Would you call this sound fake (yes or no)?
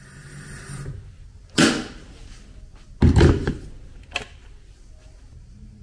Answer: no